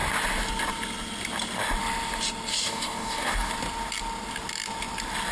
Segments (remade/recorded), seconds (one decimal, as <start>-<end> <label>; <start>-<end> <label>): 0.0-2.5 recorded; 2.5-3.5 remade; 3.5-5.3 recorded